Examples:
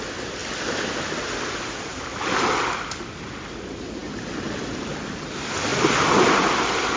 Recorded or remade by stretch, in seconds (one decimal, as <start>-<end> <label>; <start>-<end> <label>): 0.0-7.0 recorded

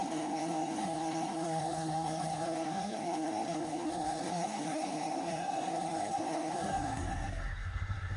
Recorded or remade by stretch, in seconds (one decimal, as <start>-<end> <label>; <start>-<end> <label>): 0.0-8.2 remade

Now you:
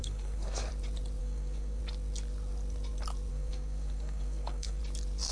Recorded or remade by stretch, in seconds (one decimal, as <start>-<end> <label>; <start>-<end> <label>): 0.0-0.7 remade; 0.7-1.2 recorded; 1.2-1.8 remade; 1.8-3.3 recorded; 3.3-4.8 remade; 4.8-5.3 recorded

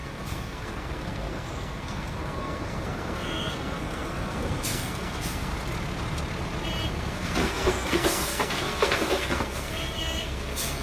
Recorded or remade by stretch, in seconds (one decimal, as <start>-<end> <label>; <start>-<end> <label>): 0.0-5.5 remade; 5.5-6.9 recorded; 6.9-10.8 remade